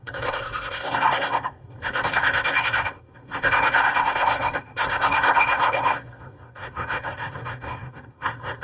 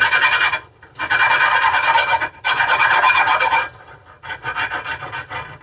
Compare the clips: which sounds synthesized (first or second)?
first